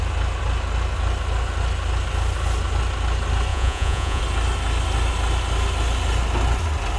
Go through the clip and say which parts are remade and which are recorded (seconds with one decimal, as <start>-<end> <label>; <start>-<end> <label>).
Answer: 0.0-3.5 recorded; 3.5-4.2 remade; 4.2-7.0 recorded

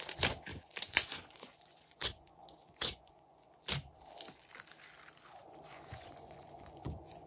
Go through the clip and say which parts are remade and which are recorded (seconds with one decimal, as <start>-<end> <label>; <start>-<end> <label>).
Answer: 0.0-0.5 recorded; 0.5-3.5 remade; 3.5-5.4 recorded; 5.4-7.3 remade

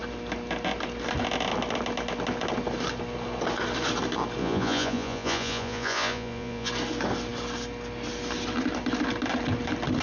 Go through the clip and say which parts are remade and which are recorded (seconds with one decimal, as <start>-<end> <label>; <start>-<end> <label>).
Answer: 0.0-4.4 recorded; 4.4-6.7 remade; 6.7-10.0 recorded

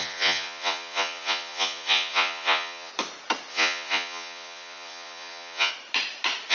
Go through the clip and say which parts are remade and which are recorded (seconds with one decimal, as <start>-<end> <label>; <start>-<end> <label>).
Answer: 0.0-2.9 remade; 2.9-3.5 recorded; 3.5-5.7 remade; 5.7-6.5 recorded